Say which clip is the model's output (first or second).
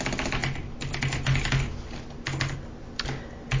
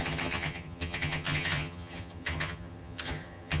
second